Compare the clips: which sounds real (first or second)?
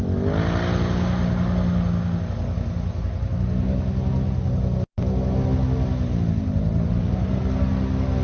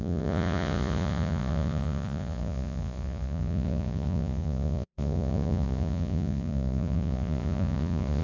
first